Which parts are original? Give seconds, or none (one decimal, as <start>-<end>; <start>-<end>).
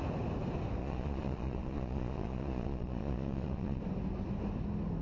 0.0-0.8; 3.8-5.0